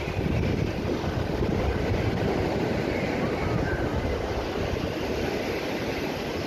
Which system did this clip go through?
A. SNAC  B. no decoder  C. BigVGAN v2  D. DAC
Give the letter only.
B